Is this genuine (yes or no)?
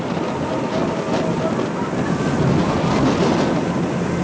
yes